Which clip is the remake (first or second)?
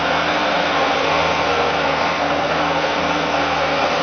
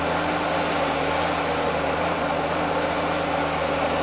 first